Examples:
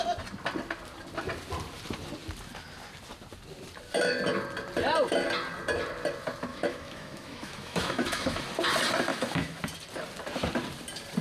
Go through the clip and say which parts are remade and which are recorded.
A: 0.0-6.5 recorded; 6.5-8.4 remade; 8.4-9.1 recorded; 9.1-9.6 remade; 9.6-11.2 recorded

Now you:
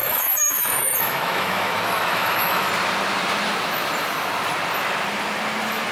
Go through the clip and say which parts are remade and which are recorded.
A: 0.0-2.7 remade; 2.7-5.9 recorded

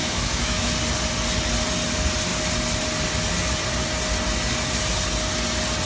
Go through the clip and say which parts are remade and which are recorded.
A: 0.0-0.7 remade; 0.7-5.9 recorded

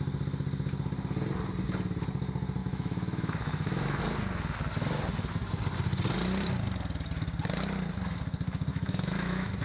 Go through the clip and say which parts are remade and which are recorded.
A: 0.0-2.6 recorded; 2.6-4.0 remade; 4.0-8.7 recorded; 8.7-9.6 remade

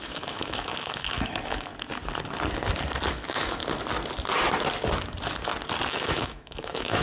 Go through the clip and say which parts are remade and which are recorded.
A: 0.0-1.7 remade; 1.7-3.1 recorded; 3.1-3.6 remade; 3.6-5.9 recorded; 5.9-7.0 remade

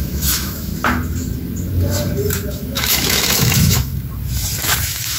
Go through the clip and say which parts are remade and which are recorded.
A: 0.0-0.7 remade; 0.7-2.5 recorded; 2.5-3.9 remade; 3.9-4.8 recorded; 4.8-5.2 remade